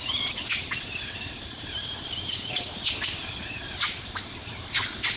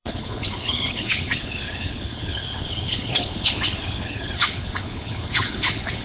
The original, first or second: first